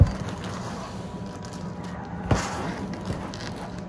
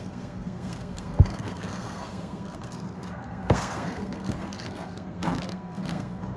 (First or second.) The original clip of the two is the first